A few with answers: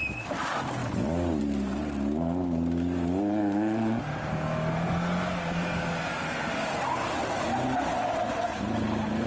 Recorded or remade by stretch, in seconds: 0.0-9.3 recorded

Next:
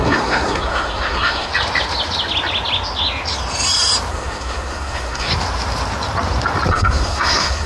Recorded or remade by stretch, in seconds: 0.0-1.5 remade; 1.5-4.1 recorded; 4.1-5.3 remade; 5.3-6.7 recorded; 6.7-7.7 remade

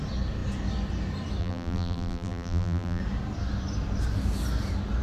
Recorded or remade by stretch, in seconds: 0.0-1.4 recorded; 1.4-3.0 remade; 3.0-5.0 recorded

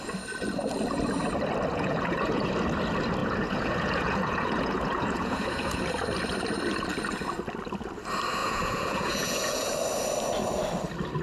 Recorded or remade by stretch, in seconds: 0.0-1.7 recorded; 1.7-2.5 remade; 2.5-3.2 recorded; 3.2-5.8 remade; 5.8-8.4 recorded; 8.4-9.7 remade; 9.7-11.2 recorded

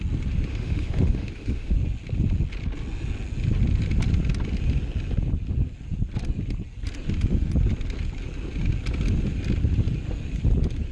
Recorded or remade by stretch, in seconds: 0.0-0.5 recorded; 0.5-1.7 remade; 1.7-10.9 recorded

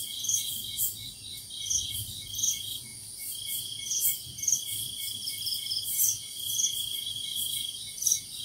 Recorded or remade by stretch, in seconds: 0.0-8.4 recorded